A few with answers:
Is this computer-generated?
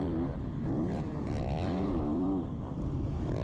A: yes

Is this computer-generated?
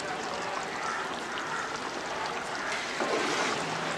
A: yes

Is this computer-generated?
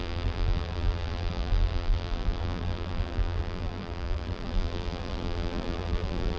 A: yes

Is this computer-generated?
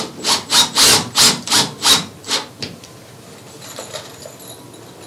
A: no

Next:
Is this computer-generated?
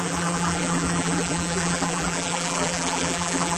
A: yes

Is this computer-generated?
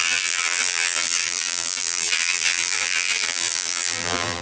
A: yes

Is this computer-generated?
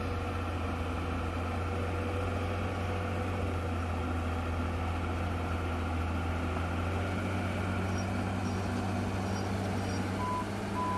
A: no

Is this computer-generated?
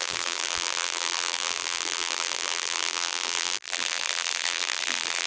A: yes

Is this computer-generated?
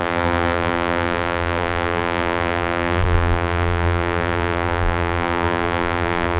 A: yes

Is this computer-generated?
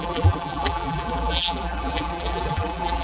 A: yes